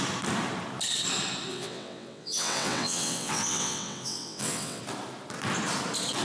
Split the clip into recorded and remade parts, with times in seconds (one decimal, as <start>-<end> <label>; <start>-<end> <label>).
0.0-1.5 recorded; 1.5-4.8 remade; 4.8-6.2 recorded

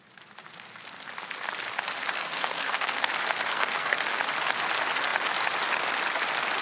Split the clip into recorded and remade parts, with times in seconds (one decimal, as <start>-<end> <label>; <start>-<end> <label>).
0.0-2.2 recorded; 2.2-3.1 remade; 3.1-3.5 recorded; 3.5-4.2 remade; 4.2-6.6 recorded

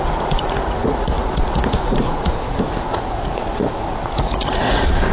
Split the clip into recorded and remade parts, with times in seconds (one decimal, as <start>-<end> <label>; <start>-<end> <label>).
0.0-5.1 remade

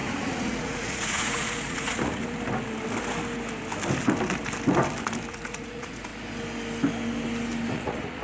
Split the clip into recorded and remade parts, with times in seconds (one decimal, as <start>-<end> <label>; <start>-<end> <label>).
0.0-2.2 remade; 2.2-5.3 recorded; 5.3-6.1 remade; 6.1-7.7 recorded; 7.7-8.2 remade